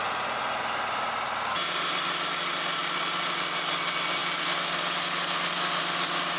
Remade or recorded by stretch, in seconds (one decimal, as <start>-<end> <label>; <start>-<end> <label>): 0.0-6.4 recorded